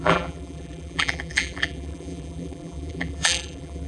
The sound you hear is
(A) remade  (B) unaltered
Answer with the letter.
A